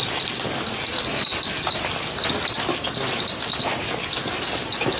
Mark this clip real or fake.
real